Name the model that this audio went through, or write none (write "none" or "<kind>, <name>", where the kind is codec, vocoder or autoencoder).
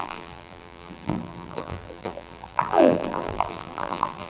vocoder, BigVGAN v2